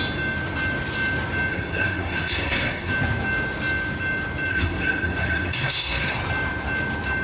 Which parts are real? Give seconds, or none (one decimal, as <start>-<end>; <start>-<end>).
0.0-1.5; 2.9-4.5; 6.2-7.2